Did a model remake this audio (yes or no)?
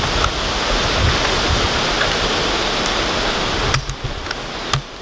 no